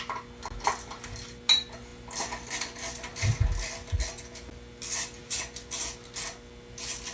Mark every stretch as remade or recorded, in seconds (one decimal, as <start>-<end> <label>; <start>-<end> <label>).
0.0-7.1 recorded